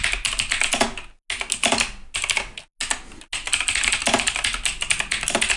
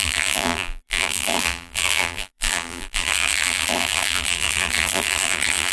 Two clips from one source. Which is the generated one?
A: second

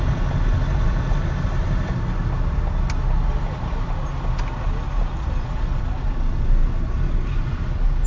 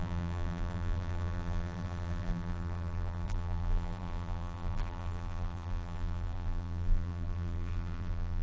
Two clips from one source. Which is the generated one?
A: second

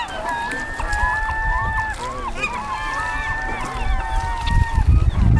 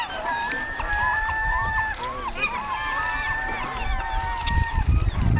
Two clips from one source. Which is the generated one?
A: second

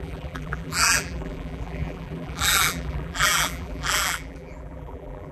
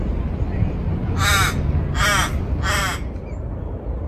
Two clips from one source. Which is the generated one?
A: first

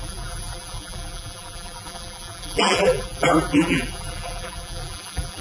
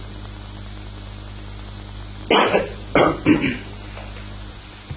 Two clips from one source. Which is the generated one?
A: first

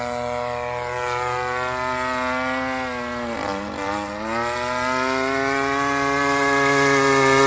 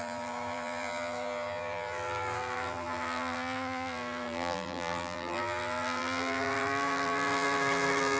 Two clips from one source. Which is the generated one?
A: second